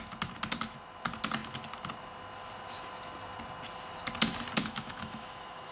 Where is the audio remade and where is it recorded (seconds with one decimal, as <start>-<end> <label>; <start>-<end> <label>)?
0.0-4.6 recorded; 4.6-5.7 remade